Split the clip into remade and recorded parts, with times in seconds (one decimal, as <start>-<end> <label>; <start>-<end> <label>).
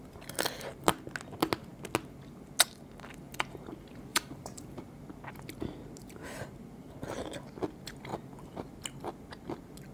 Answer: 0.0-4.1 recorded; 4.1-4.8 remade; 4.8-6.0 recorded; 6.0-6.5 remade; 6.5-9.9 recorded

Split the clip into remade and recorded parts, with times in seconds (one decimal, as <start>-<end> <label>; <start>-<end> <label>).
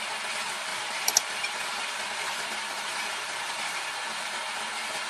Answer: 0.0-0.7 recorded; 0.7-3.8 remade; 3.8-5.1 recorded